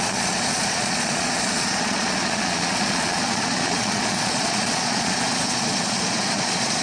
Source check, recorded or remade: remade